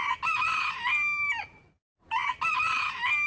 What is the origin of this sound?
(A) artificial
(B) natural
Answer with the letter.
B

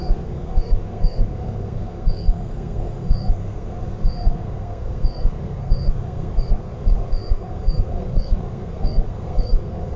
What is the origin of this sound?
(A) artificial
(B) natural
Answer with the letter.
A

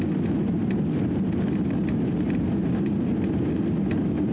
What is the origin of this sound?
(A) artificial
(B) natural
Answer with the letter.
B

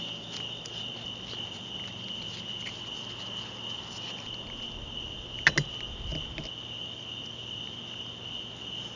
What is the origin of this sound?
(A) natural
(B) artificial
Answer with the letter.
A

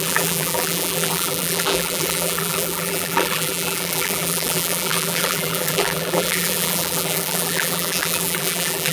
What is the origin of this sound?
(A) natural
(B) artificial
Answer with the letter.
B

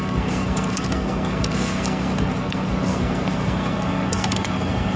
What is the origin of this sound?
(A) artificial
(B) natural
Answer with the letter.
A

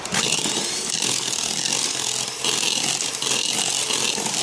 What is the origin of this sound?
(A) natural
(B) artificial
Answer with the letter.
A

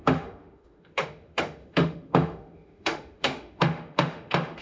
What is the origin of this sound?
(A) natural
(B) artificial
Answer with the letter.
B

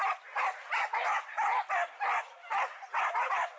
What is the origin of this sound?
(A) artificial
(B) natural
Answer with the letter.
B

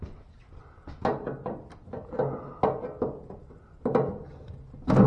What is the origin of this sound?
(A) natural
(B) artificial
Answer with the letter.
A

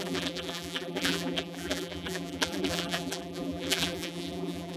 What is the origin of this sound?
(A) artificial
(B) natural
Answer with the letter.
A